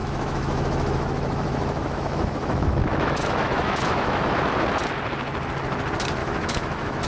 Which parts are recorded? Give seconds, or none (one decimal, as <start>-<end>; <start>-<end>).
4.3-6.2